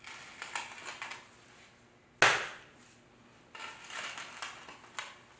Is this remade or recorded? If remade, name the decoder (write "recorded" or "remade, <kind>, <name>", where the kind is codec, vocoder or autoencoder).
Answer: recorded